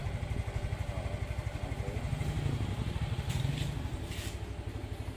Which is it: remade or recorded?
recorded